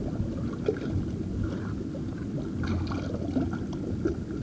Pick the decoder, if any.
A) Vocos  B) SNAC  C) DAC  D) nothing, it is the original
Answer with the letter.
D